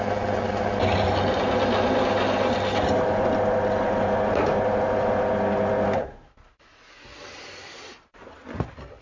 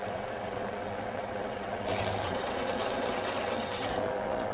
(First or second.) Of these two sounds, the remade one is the second